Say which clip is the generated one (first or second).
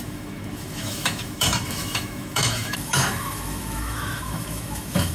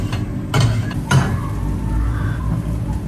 first